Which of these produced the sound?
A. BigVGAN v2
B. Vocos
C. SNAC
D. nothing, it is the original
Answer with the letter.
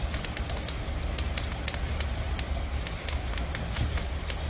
D